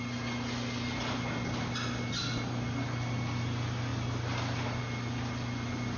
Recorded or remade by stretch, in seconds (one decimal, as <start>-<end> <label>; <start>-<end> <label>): 0.0-6.0 recorded